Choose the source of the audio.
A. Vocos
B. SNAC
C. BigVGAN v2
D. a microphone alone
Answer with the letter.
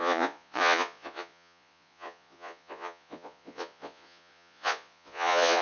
A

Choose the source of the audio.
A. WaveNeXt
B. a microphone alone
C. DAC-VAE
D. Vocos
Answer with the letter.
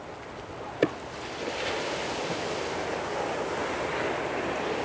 B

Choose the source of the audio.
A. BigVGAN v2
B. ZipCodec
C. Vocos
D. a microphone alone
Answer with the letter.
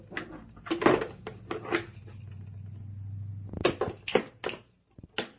D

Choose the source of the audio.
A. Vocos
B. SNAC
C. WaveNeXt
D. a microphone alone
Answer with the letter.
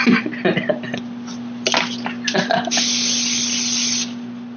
D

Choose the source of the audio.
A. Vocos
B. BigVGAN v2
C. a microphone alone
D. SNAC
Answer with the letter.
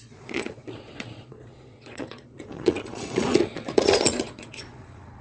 A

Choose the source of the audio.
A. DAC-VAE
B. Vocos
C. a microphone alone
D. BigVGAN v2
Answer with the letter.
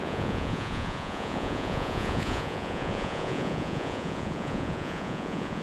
B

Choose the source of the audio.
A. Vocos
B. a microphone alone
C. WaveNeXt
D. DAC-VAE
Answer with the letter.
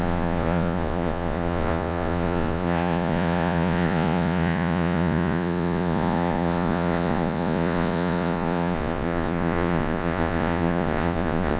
A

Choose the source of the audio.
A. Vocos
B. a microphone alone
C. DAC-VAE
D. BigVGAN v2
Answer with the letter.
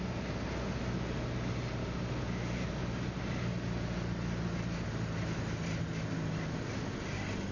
B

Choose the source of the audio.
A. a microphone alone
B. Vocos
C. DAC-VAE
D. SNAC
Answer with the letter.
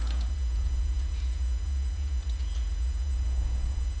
B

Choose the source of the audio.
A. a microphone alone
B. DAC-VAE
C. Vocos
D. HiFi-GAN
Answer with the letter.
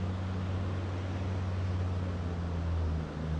A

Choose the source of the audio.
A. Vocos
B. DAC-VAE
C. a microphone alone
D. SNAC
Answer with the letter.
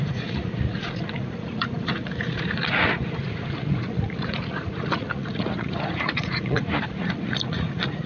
A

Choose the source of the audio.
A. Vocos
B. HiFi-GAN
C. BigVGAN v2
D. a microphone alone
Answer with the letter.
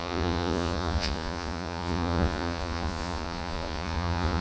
A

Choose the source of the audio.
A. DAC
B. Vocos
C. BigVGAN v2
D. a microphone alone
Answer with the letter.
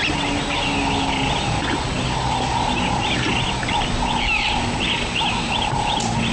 D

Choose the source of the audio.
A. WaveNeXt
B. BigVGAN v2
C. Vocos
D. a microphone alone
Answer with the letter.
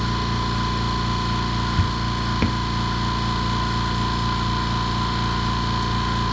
D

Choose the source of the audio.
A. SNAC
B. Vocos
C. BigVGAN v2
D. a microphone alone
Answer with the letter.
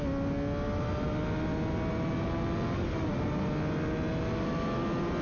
D